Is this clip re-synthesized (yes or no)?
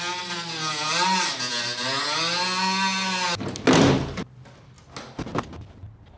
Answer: no